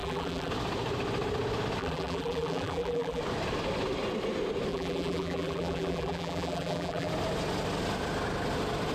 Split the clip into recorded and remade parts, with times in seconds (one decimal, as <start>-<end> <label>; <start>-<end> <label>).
0.0-0.5 remade; 0.5-1.8 recorded; 1.8-3.2 remade; 3.2-4.7 recorded; 4.7-7.1 remade; 7.1-8.9 recorded